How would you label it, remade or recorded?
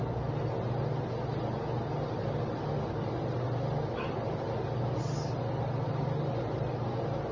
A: recorded